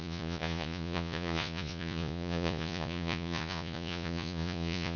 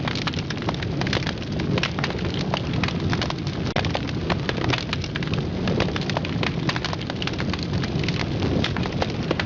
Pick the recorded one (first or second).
second